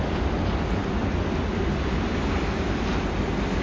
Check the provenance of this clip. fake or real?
real